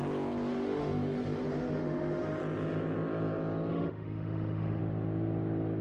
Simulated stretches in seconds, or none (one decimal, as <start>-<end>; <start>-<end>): 0.5-2.4; 3.7-4.8